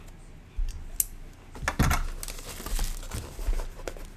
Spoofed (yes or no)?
no